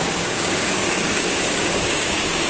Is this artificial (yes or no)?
yes